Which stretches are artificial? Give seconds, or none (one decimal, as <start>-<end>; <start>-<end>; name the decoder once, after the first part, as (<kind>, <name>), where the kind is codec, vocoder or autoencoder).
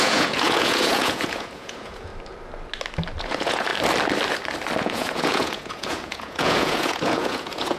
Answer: 0.0-2.1 (vocoder, Vocos); 3.2-3.7; 4.8-7.8